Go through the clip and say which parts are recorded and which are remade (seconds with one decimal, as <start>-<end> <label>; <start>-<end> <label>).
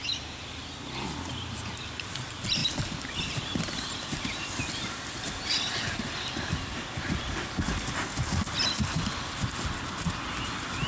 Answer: 0.0-2.6 recorded; 2.6-7.6 remade; 7.6-10.9 recorded